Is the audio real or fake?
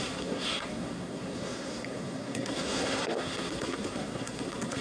fake